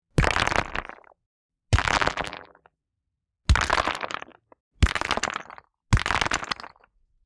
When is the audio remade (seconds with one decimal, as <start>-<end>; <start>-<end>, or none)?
1.8-2.8